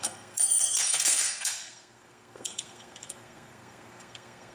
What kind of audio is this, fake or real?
fake